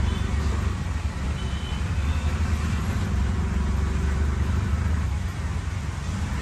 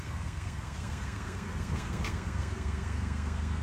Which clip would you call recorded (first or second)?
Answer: first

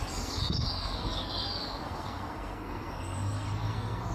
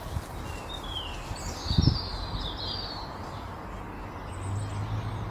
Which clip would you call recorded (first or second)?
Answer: second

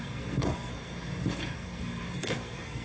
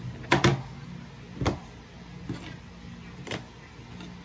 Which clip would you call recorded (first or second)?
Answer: second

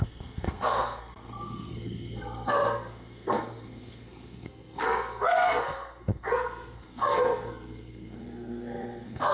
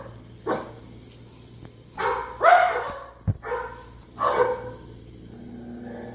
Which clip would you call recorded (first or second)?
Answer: second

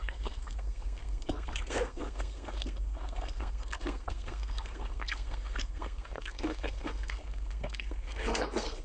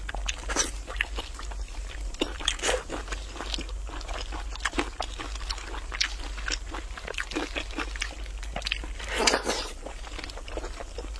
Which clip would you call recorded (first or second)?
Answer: second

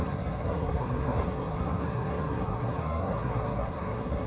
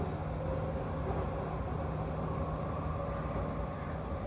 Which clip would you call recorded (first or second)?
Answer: second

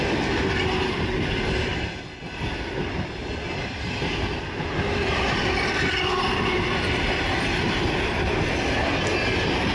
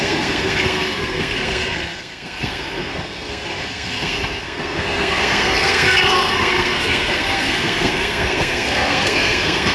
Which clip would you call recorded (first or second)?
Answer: first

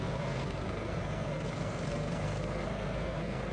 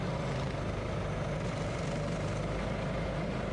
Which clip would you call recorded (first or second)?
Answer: second